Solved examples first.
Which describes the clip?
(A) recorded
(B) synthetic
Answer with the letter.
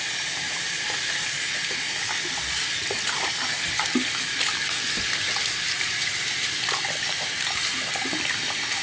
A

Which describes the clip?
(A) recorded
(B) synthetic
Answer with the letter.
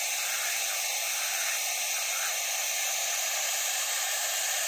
B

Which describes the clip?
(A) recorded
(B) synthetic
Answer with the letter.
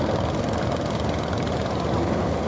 A